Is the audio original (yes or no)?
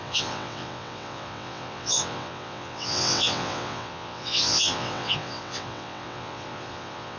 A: no